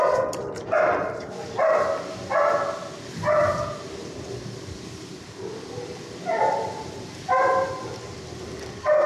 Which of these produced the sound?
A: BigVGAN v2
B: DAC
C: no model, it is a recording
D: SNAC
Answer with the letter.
C